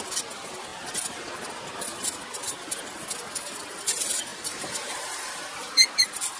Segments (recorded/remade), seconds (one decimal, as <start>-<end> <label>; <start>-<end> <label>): 0.0-4.3 recorded; 4.3-5.9 remade; 5.9-6.4 recorded